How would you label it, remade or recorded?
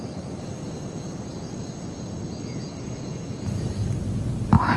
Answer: recorded